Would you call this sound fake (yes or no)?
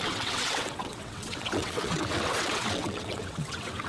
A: yes